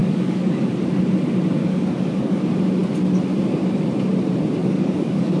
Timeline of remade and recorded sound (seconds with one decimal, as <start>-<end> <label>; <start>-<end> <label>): 0.0-0.7 remade; 0.7-1.6 recorded; 1.6-2.4 remade; 2.4-4.6 recorded; 4.6-5.4 remade